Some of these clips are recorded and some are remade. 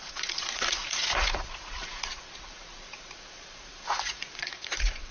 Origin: remade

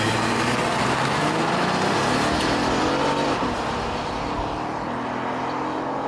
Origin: recorded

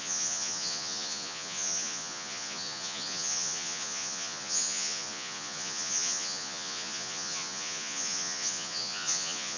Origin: remade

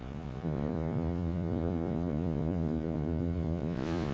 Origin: remade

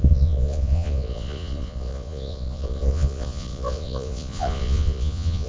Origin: remade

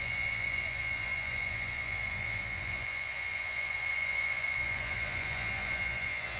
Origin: remade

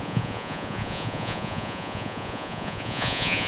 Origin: remade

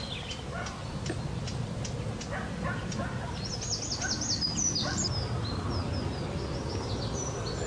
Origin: recorded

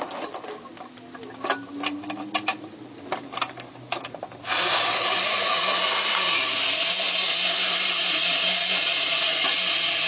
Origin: recorded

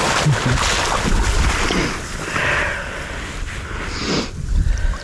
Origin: recorded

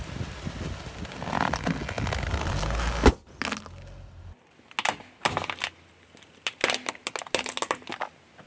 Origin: recorded